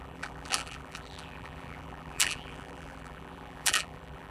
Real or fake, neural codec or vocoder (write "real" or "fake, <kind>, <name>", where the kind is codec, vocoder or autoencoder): fake, vocoder, BigVGAN v2